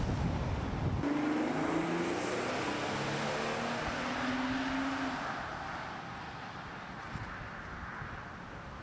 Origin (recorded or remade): recorded